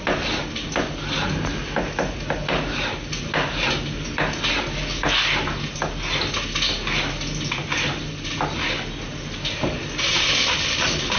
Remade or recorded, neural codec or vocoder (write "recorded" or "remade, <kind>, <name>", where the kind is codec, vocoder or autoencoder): recorded